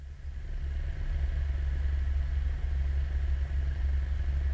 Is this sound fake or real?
real